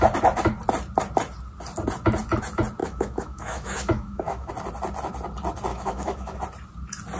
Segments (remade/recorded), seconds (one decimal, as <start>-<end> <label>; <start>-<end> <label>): 0.0-2.8 recorded; 2.8-4.5 remade; 4.5-5.7 recorded; 5.7-6.4 remade; 6.4-7.2 recorded